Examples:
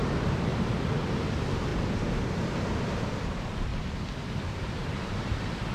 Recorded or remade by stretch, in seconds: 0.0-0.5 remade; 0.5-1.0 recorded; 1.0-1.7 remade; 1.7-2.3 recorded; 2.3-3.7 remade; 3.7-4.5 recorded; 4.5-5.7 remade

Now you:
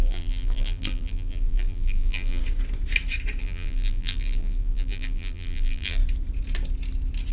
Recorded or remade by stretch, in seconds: 0.0-2.4 remade; 2.4-3.4 recorded; 3.4-6.0 remade; 6.0-7.3 recorded